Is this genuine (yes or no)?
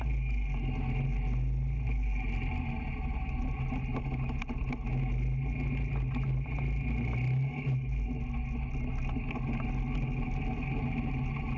yes